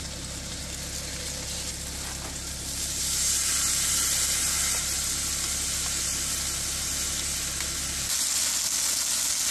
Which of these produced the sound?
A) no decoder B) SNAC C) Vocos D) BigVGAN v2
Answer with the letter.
A